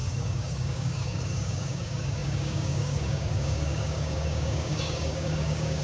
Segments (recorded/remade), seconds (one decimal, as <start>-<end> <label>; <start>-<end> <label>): 0.0-5.8 remade